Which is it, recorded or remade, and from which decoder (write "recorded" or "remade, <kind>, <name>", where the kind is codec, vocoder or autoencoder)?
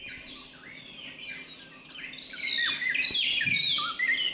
recorded